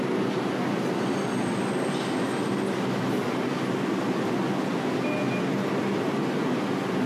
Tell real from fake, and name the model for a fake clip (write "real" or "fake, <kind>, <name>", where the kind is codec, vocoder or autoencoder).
real